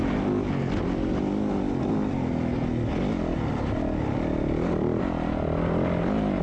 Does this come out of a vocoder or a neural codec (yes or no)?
no